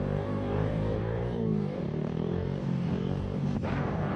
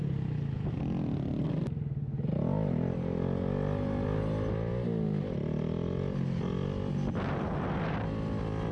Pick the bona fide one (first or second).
second